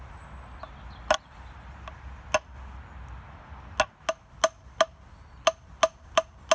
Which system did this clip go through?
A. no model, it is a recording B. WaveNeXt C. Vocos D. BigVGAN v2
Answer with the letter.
A